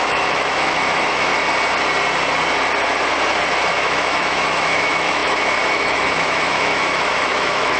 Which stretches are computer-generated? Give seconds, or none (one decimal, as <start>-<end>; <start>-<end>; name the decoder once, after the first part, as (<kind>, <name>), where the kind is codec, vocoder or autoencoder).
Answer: 0.0-1.3 (autoencoder, DAC-VAE); 3.7-7.8